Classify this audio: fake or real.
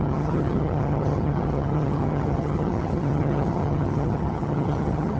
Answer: fake